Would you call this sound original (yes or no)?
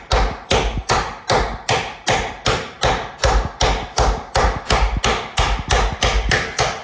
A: yes